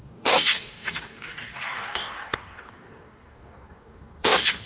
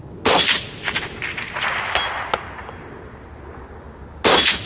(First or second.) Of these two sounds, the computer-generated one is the first